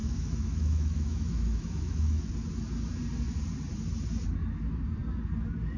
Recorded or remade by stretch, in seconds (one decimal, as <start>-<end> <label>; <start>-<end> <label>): 0.0-2.3 remade; 2.3-5.8 recorded